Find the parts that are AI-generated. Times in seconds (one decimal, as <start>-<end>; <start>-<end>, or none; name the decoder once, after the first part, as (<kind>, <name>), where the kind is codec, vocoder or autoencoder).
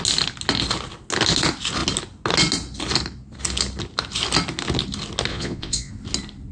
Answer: 5.3-5.9 (vocoder, Vocos)